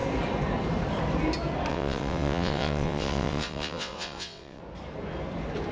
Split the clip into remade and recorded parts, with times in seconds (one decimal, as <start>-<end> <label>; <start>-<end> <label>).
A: 0.0-1.7 recorded; 1.7-4.6 remade; 4.6-5.7 recorded